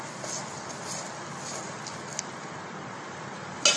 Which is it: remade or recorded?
recorded